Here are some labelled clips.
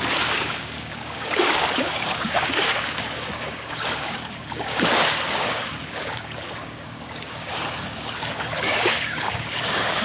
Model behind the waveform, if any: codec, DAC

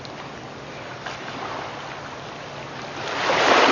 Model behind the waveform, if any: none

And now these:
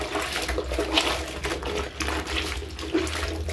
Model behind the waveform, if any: none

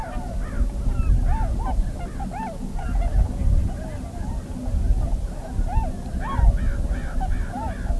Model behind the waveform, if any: none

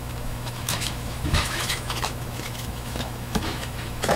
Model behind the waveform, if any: autoencoder, DAC-VAE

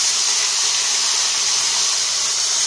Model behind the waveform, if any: none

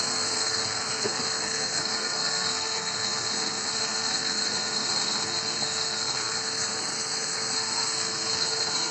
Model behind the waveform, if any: codec, SNAC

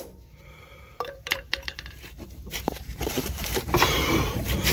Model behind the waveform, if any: vocoder, BigVGAN v2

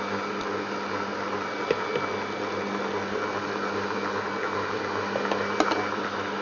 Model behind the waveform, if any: none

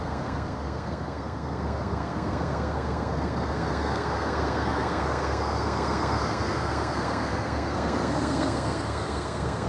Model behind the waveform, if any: codec, SNAC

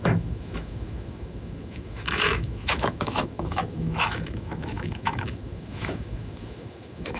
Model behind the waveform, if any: autoencoder, DAC-VAE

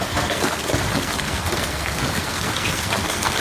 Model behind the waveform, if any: codec, SNAC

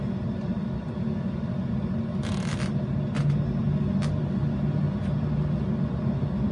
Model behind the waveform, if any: none